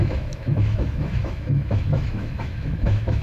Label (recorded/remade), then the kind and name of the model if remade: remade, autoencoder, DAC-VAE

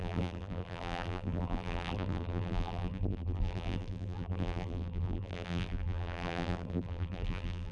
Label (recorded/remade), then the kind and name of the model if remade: remade, vocoder, BigVGAN v2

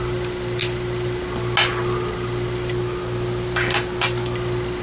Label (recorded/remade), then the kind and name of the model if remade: recorded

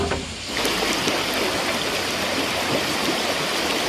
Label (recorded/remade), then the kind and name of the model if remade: recorded